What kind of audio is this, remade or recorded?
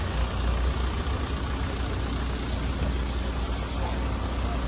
recorded